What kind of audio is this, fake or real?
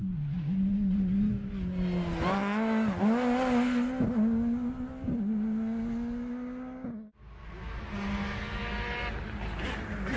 real